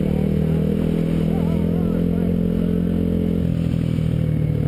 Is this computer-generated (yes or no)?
no